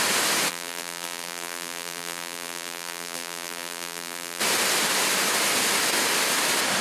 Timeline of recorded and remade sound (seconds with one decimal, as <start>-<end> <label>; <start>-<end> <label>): 0.0-0.5 recorded; 0.5-4.4 remade; 4.4-6.8 recorded